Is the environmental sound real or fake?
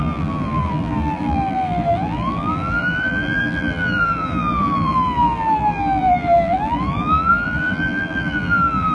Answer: fake